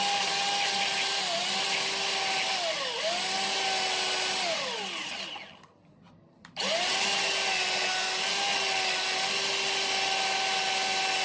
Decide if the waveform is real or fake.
real